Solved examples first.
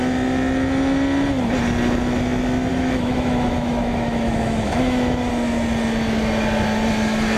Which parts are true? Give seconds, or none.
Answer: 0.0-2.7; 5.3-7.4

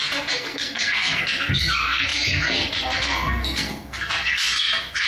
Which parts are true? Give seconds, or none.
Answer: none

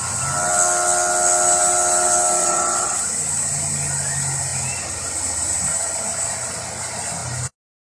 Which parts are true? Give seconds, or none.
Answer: 0.0-2.4; 3.0-8.0